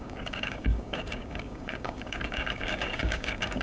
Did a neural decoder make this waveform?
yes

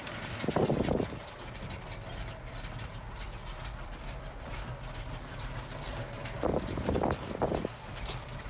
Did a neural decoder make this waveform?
no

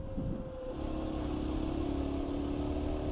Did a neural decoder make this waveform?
no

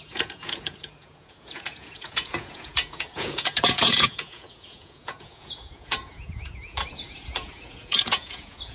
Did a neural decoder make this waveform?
yes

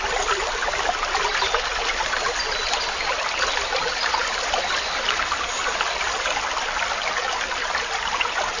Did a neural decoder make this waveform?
no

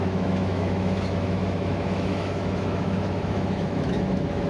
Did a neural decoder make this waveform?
yes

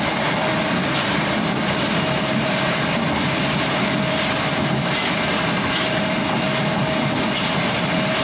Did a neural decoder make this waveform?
no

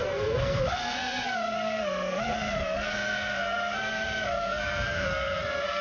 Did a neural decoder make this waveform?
yes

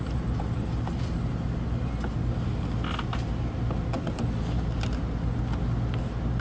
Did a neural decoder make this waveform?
no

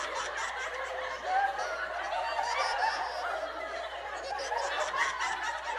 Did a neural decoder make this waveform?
no